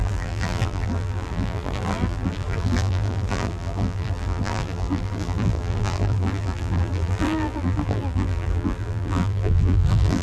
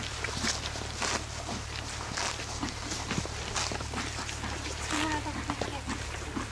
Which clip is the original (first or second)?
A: second